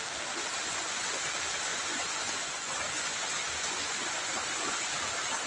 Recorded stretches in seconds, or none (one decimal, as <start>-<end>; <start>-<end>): 0.0-0.6; 1.2-1.7; 5.0-5.5